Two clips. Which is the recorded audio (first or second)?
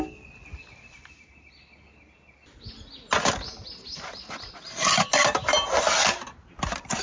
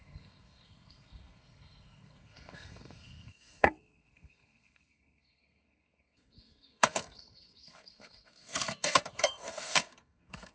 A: first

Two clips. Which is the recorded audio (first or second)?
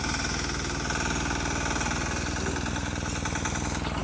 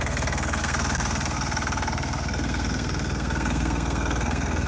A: first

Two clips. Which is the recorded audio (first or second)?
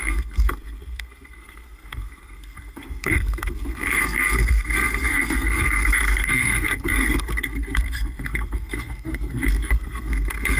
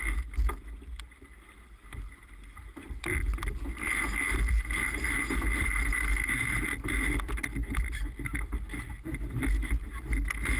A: second